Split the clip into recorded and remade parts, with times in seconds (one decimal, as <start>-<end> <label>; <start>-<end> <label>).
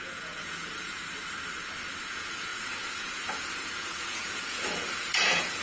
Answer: 0.0-1.0 remade; 1.0-2.0 recorded; 2.0-5.6 remade